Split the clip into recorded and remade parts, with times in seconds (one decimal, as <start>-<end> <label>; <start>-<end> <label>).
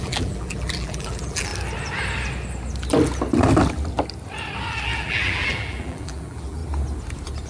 0.0-1.5 remade; 1.5-4.7 recorded; 4.7-6.6 remade; 6.6-7.5 recorded